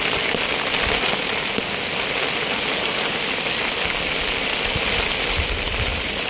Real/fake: real